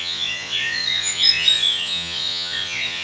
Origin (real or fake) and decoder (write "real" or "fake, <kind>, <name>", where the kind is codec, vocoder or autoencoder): fake, vocoder, Vocos